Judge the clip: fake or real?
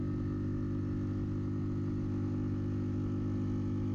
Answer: real